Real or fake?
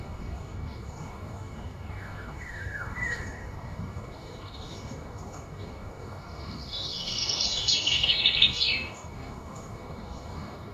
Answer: fake